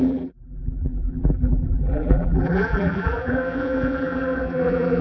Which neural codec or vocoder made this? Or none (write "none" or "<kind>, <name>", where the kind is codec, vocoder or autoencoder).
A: vocoder, BigVGAN v2